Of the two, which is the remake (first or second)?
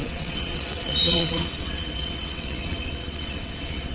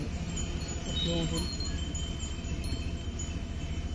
first